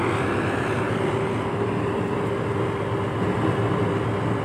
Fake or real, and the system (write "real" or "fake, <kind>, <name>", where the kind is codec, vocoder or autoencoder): real